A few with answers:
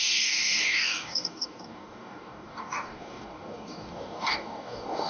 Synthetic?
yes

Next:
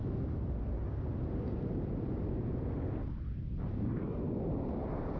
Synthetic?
no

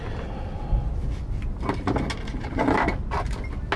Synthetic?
no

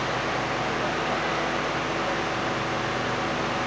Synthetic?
no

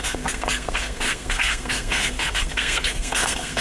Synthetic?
yes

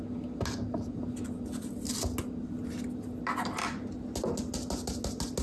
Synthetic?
no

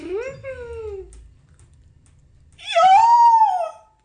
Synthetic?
no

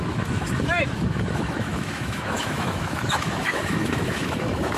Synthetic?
yes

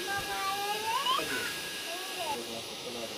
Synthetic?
yes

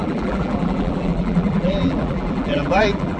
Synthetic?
yes